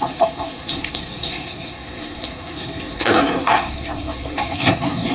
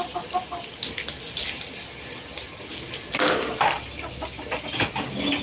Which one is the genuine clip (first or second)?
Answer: second